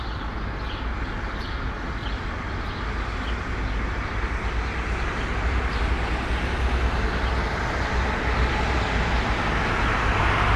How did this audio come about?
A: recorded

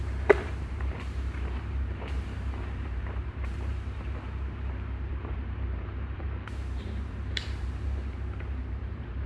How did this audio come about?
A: remade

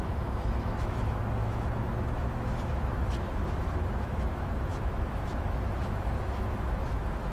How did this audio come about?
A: remade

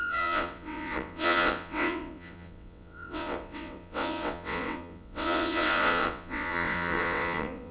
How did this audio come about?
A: remade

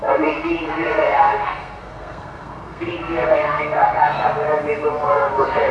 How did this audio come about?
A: remade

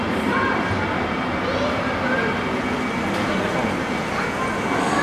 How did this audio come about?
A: recorded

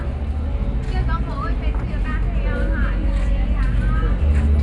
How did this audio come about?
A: recorded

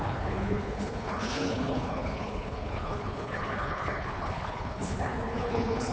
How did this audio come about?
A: remade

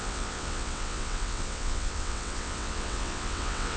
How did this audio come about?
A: remade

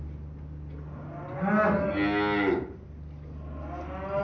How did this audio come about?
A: recorded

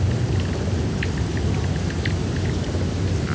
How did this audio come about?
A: recorded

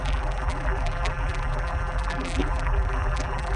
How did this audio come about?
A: remade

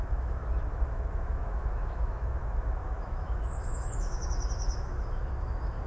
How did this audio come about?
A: remade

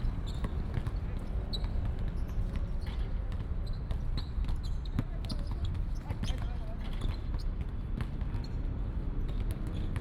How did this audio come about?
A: recorded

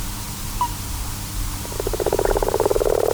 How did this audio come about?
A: recorded